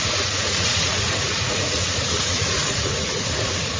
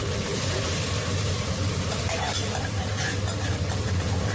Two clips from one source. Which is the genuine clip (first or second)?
second